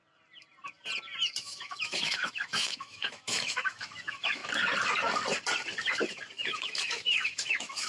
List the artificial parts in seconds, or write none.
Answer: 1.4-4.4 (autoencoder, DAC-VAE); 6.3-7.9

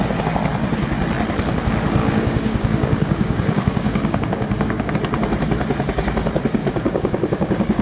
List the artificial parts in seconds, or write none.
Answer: 2.0-4.9 (codec, DAC); 6.6-7.8

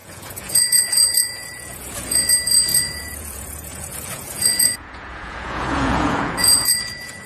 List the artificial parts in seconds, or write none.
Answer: 0.0-2.3 (vocoder, Vocos); 2.7-7.3

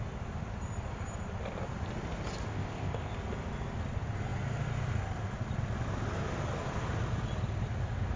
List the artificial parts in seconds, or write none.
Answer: 2.5-3.1 (codec, ZipCodec)

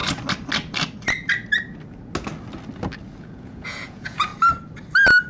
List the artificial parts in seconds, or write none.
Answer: 3.2-4.3 (vocoder, Vocos)

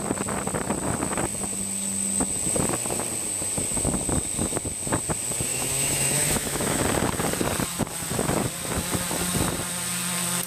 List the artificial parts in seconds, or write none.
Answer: 5.5-6.8 (autoencoder, DAC-VAE)

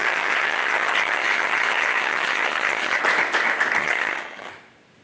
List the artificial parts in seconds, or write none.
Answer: 0.0-3.0 (vocoder, HiFi-GAN); 3.8-4.5

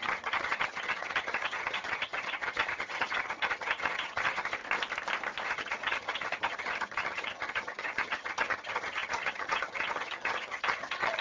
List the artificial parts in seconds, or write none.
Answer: 0.0-4.6 (vocoder, HiFi-GAN); 5.4-11.2